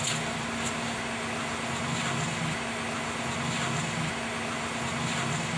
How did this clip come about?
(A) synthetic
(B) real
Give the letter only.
B